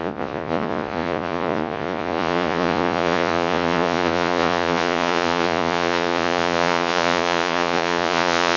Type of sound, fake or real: fake